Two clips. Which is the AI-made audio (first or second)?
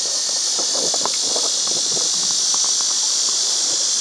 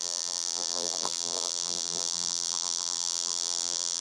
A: second